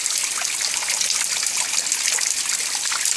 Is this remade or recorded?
recorded